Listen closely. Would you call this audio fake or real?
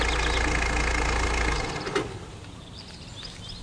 real